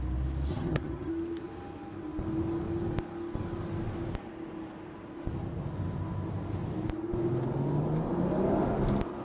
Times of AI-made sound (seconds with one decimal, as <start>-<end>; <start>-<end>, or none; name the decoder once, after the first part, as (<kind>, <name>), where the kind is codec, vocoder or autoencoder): 0.5-1.1 (vocoder, HiFi-GAN)